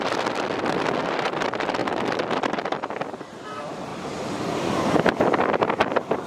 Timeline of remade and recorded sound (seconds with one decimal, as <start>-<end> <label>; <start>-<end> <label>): 0.0-3.9 recorded; 3.9-4.9 remade; 4.9-6.3 recorded